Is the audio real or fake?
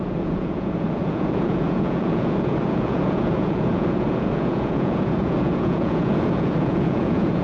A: fake